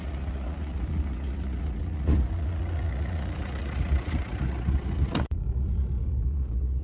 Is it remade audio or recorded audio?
remade